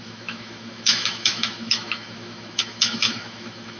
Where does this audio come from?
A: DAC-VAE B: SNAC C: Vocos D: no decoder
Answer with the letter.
A